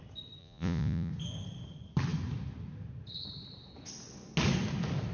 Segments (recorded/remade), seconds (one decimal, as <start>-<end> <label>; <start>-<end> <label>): 0.0-0.4 recorded; 0.4-1.1 remade; 1.1-5.1 recorded